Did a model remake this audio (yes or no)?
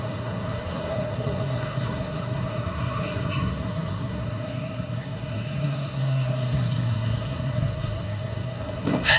yes